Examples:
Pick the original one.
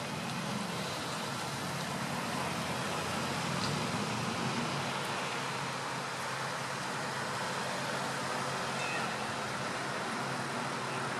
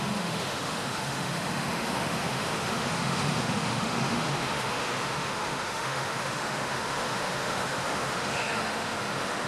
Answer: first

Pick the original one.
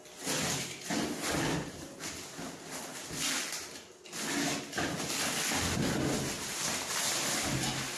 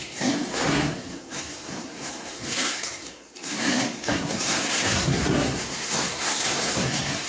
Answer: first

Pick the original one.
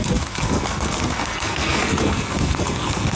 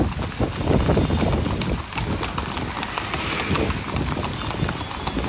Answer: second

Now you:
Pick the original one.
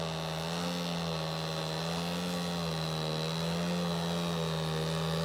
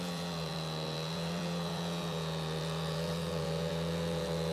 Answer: first